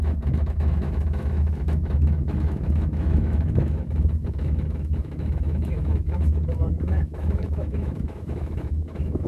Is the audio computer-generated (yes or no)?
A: yes